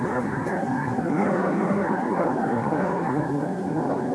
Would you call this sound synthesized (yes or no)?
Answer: yes